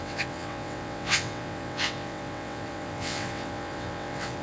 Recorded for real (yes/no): no